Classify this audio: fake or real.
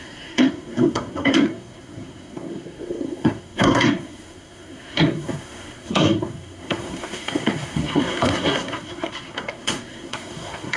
fake